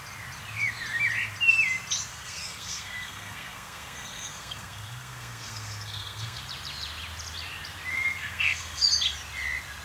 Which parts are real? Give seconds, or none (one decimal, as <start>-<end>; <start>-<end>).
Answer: 0.0-2.1; 6.4-7.9; 8.8-9.8